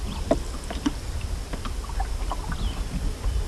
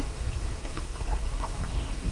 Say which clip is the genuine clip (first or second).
first